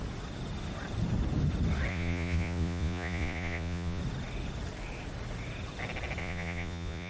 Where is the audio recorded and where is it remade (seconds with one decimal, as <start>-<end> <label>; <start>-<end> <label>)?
0.0-1.9 recorded; 1.9-4.0 remade; 4.0-6.2 recorded; 6.2-7.1 remade